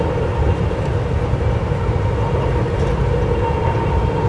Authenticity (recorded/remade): recorded